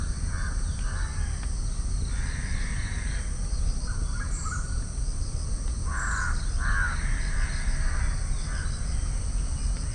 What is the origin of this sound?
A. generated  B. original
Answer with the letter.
B